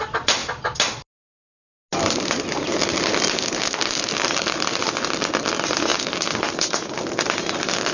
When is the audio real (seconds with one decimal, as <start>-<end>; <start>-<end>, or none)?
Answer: 0.0-7.9